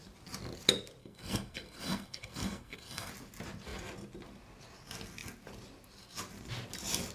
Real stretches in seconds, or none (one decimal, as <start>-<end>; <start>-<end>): 0.0-1.0; 3.1-7.1